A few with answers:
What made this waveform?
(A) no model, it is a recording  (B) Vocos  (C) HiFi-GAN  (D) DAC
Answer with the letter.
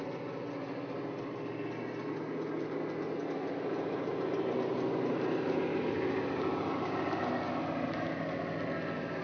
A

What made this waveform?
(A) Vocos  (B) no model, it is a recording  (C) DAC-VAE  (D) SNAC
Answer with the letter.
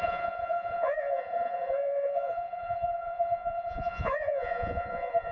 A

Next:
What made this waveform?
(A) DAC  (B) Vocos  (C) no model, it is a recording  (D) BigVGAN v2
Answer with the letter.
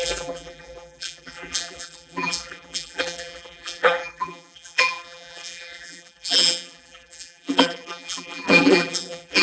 D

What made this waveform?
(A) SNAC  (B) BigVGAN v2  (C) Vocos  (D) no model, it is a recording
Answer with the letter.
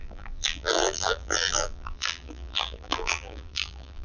B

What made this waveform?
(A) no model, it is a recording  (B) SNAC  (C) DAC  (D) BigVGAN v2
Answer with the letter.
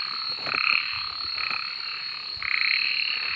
A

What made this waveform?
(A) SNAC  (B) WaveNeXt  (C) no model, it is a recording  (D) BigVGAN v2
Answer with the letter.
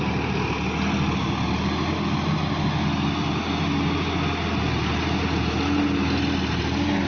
C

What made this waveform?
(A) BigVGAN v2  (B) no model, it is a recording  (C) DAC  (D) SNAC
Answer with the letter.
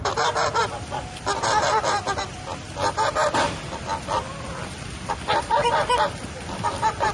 A